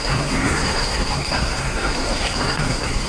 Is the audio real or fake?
fake